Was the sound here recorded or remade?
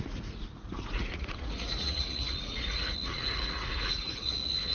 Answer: remade